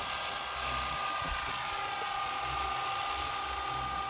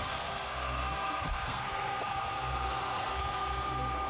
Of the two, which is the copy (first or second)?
second